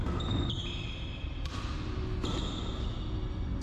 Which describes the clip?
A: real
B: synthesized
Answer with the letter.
A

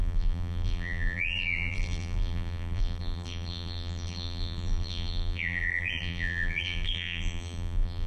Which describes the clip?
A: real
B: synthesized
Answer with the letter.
B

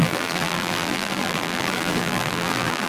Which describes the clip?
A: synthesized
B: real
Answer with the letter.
A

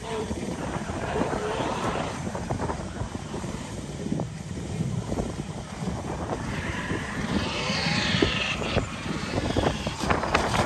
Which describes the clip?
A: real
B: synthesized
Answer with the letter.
B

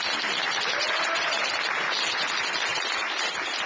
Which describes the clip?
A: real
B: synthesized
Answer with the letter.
A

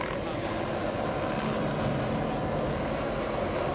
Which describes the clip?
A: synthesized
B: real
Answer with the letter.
B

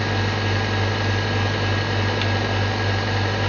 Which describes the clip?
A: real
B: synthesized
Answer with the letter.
A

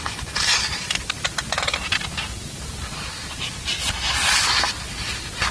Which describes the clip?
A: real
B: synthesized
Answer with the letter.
A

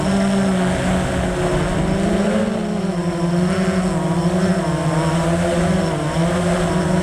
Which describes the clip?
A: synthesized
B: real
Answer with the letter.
B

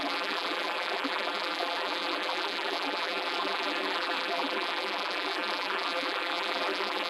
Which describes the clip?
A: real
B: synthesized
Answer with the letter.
B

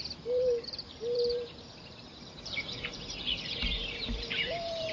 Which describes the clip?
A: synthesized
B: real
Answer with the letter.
A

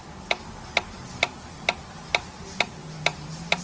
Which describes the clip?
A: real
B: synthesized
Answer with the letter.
A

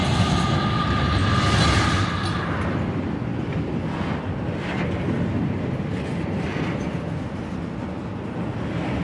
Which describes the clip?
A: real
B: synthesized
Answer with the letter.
A